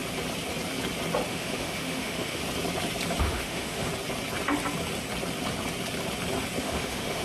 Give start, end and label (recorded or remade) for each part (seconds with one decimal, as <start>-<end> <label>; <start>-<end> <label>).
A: 0.0-1.3 recorded; 1.3-2.4 remade; 2.4-3.2 recorded; 3.2-3.9 remade; 3.9-6.6 recorded; 6.6-7.2 remade